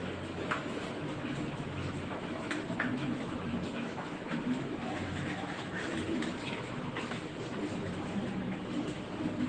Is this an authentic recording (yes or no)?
no